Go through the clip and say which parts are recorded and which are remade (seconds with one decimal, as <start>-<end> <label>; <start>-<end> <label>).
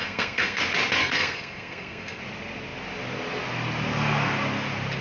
0.0-0.6 remade; 0.6-1.0 recorded; 1.0-2.2 remade; 2.2-5.0 recorded